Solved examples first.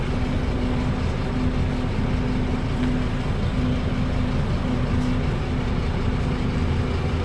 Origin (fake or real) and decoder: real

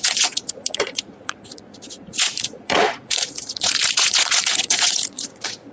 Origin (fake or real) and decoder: fake, vocoder, Vocos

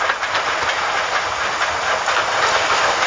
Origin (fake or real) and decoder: real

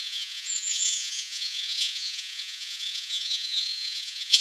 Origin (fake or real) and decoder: fake, vocoder, Vocos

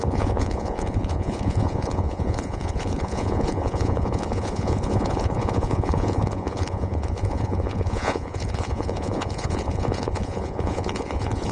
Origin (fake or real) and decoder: fake, vocoder, Vocos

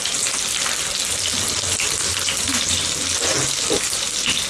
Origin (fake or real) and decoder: real